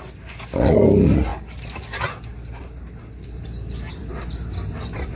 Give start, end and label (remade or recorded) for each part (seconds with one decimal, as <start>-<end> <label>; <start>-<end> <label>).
0.0-5.2 recorded